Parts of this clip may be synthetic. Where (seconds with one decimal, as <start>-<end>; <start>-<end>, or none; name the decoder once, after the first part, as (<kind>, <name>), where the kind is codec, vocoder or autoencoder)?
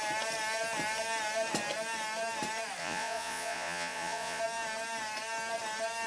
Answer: 2.8-4.4 (vocoder, Vocos)